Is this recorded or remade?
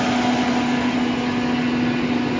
recorded